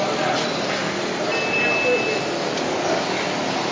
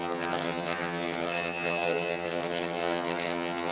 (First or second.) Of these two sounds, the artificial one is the second